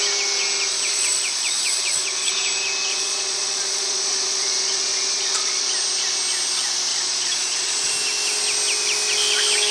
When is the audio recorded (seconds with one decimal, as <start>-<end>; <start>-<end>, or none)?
0.0-0.7; 2.3-2.9; 5.6-6.9; 7.9-9.7